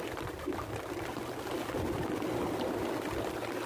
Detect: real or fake real